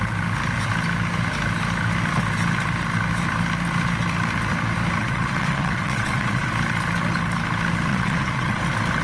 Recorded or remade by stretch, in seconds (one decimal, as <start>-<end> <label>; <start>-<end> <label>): 0.0-5.0 recorded; 5.0-6.5 remade; 6.5-7.9 recorded; 7.9-8.6 remade; 8.6-9.0 recorded